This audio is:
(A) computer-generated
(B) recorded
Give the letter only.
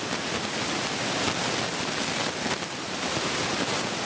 B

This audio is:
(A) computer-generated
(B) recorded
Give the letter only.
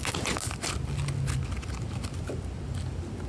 B